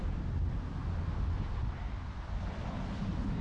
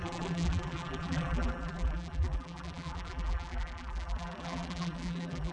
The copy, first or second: second